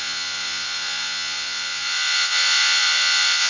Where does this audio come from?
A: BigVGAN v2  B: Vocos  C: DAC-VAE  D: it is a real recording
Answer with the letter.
B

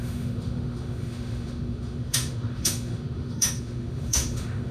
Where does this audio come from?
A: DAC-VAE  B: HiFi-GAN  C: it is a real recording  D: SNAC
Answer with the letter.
A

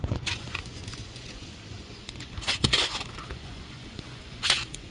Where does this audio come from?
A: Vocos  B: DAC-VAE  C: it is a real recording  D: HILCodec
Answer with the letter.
A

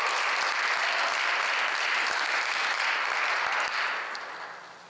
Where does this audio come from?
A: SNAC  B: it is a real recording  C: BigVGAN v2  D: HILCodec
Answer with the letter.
B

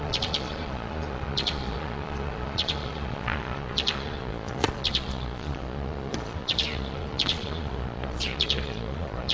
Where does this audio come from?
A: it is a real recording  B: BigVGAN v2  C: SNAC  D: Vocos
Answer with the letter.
D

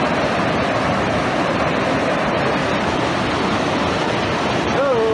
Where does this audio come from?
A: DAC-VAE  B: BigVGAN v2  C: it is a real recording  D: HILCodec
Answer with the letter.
C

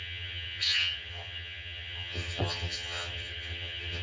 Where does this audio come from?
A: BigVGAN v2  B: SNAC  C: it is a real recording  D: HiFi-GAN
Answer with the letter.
D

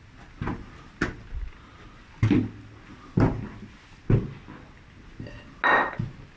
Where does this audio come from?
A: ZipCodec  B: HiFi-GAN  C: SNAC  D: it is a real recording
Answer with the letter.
D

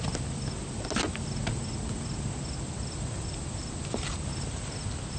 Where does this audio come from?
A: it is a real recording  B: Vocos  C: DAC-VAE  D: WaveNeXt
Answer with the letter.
A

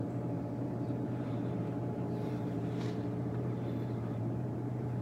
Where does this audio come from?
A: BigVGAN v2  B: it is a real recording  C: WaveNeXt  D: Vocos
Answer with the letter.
A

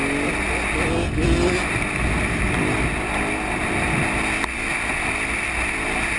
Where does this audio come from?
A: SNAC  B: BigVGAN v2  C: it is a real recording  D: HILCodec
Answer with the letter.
C